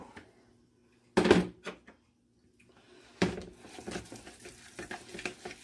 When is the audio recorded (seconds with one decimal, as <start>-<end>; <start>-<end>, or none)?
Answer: 0.0-5.6